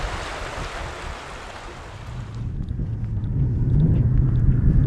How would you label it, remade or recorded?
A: recorded